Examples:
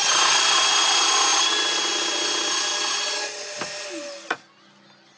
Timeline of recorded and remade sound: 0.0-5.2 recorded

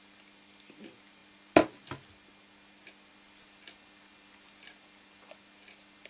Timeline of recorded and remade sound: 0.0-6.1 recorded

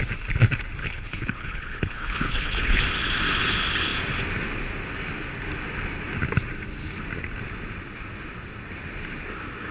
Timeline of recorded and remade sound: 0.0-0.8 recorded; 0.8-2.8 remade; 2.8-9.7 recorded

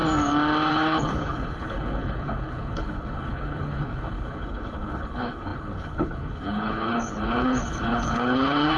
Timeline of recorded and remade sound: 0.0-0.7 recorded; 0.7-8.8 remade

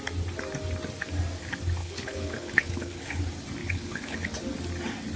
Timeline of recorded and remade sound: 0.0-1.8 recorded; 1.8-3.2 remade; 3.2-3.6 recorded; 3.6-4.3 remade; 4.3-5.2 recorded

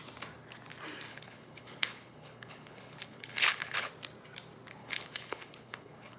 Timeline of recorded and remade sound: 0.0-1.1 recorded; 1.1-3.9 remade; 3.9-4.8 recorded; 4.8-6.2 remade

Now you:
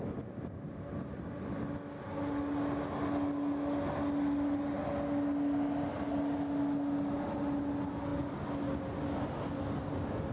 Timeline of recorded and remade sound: 0.0-10.3 recorded

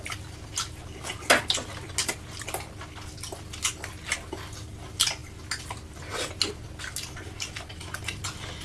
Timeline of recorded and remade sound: 0.0-8.6 recorded